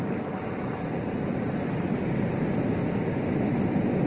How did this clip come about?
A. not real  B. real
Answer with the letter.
B